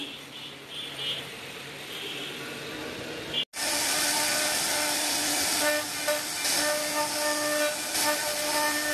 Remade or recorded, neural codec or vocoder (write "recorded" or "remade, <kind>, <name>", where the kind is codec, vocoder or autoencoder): recorded